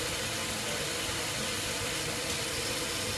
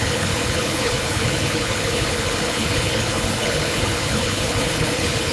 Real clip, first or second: first